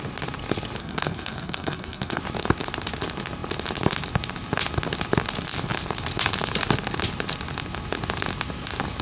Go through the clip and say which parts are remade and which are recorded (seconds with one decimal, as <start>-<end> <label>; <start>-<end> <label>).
0.0-0.8 recorded; 0.8-2.2 remade; 2.2-9.0 recorded